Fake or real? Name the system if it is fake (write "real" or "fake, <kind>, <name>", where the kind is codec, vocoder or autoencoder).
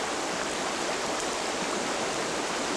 real